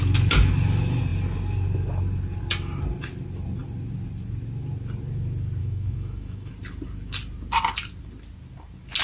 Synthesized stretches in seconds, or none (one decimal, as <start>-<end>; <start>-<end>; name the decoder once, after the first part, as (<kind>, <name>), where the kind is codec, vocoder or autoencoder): 5.6-6.5 (autoencoder, DAC-VAE)